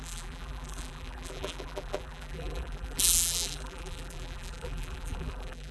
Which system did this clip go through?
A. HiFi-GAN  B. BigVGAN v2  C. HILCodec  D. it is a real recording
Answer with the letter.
B